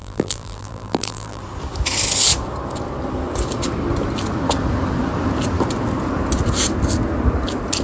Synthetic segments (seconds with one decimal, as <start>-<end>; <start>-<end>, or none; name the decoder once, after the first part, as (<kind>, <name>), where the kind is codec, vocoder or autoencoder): 0.0-1.4 (vocoder, BigVGAN v2)